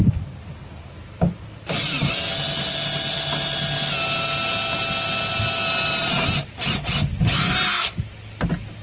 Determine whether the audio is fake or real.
real